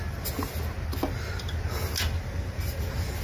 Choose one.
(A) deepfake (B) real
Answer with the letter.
B